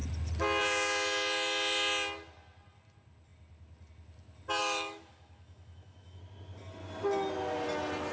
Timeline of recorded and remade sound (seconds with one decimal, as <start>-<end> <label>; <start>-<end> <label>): 0.0-4.6 recorded; 4.6-6.2 remade; 6.2-8.1 recorded